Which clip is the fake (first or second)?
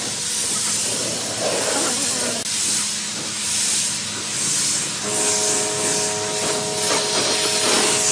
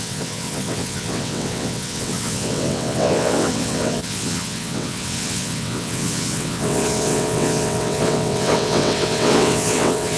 second